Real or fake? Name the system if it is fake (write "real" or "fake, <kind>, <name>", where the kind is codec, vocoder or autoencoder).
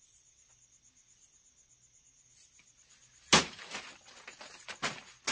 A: real